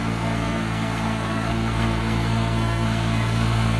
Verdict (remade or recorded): remade